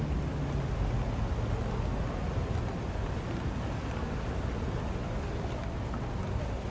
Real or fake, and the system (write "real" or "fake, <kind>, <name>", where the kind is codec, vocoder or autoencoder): real